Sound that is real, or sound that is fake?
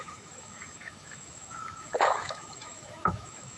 fake